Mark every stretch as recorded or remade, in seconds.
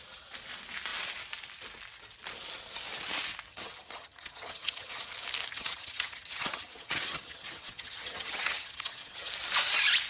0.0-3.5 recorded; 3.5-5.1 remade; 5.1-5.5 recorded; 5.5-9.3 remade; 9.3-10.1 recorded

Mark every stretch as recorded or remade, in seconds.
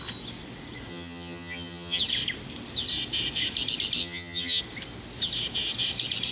0.0-0.9 recorded; 0.9-2.0 remade; 2.0-4.0 recorded; 4.0-4.6 remade; 4.6-6.3 recorded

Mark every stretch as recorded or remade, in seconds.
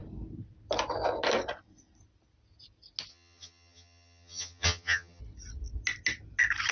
0.0-3.1 recorded; 3.1-5.2 remade; 5.2-6.7 recorded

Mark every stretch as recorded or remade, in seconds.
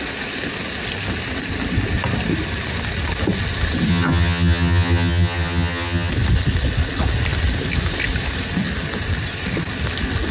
0.0-3.9 recorded; 3.9-6.1 remade; 6.1-10.3 recorded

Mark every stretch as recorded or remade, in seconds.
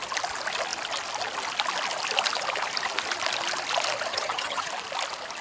0.0-4.1 recorded; 4.1-4.7 remade; 4.7-5.4 recorded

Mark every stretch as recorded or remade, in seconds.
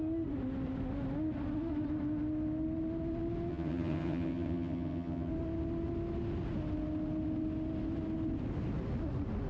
0.0-3.5 recorded; 3.5-5.3 remade; 5.3-9.5 recorded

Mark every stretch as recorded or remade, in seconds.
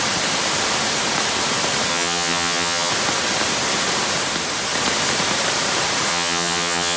0.0-1.9 recorded; 1.9-2.9 remade; 2.9-6.1 recorded; 6.1-7.0 remade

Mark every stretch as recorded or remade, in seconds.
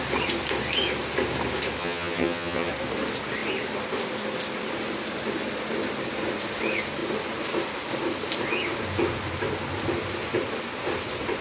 0.0-1.8 recorded; 1.8-2.7 remade; 2.7-11.4 recorded